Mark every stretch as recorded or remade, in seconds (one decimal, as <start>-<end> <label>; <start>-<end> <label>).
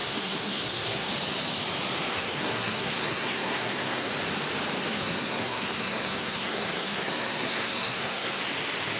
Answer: 0.0-1.1 remade; 1.1-2.1 recorded; 2.1-4.1 remade; 4.1-4.9 recorded; 4.9-8.4 remade; 8.4-9.0 recorded